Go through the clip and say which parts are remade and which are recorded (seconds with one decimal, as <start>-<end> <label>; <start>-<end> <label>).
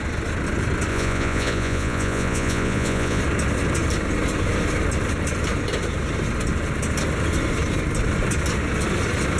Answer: 0.0-0.9 recorded; 0.9-3.2 remade; 3.2-9.4 recorded